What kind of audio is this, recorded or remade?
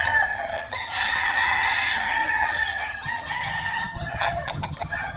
remade